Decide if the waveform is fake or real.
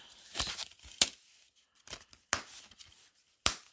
real